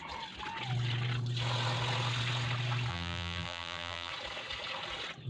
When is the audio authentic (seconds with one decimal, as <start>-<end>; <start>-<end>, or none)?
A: 0.0-2.9; 4.1-5.3